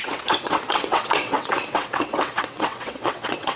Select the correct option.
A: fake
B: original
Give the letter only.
A